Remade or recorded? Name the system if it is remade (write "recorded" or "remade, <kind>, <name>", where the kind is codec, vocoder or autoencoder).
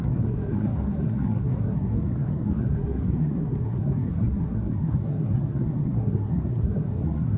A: remade, codec, SNAC